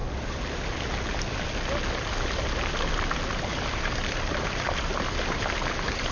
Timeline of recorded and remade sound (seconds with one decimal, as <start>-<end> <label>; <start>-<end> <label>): 0.0-3.5 recorded; 3.5-4.9 remade; 4.9-6.1 recorded